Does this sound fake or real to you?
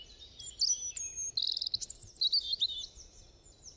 real